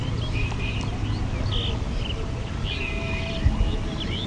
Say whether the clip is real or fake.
real